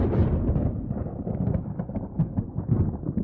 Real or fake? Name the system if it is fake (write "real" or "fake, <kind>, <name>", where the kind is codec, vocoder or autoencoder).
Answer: real